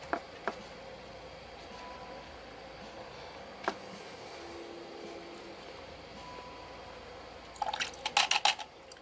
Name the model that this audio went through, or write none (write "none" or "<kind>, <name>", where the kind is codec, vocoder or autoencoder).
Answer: none